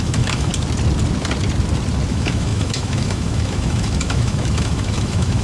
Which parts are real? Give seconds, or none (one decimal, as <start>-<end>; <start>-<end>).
0.5-2.1